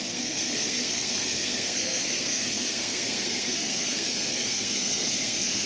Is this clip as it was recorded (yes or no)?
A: no